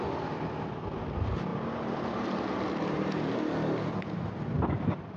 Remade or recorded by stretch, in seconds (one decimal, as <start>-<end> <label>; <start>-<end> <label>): 0.0-1.5 recorded; 1.5-4.4 remade; 4.4-5.2 recorded